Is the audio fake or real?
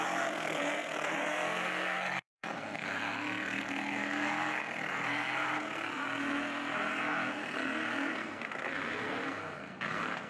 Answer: fake